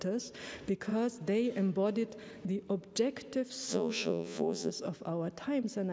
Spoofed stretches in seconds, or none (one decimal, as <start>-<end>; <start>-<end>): 3.7-4.7